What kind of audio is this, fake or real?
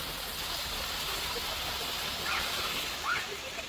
real